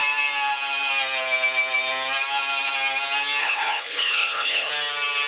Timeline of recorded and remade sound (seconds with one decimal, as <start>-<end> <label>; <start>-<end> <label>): 0.0-3.4 recorded; 3.4-4.7 remade; 4.7-5.3 recorded